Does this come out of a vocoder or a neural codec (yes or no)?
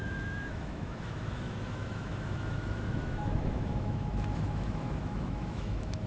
yes